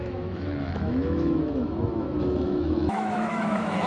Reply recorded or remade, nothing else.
remade